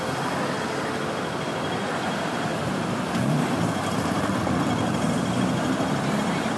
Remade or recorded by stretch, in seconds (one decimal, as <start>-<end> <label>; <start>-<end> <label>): 0.0-2.5 recorded; 2.5-6.6 remade